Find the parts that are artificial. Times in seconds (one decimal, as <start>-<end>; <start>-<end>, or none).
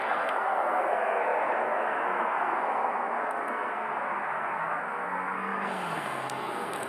0.0-6.9